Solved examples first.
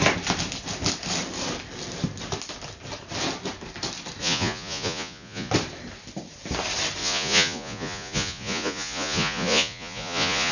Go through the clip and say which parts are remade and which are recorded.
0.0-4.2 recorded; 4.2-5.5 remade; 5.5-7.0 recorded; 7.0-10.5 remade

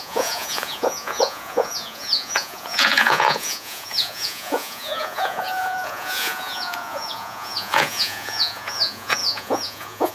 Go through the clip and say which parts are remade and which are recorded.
0.0-10.1 remade

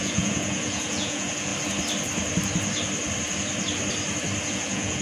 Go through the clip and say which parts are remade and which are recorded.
0.0-1.5 remade; 1.5-4.5 recorded; 4.5-5.0 remade